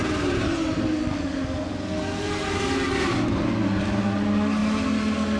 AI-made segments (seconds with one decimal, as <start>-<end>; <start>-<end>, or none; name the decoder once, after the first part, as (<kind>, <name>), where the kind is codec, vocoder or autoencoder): none